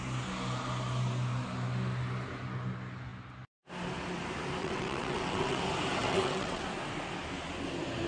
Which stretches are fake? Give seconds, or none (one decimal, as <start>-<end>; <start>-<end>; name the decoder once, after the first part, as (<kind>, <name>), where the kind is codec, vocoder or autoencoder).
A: 4.6-5.6 (vocoder, WaveNeXt); 6.0-6.6